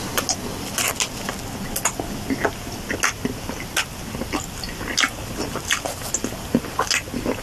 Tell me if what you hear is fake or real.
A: real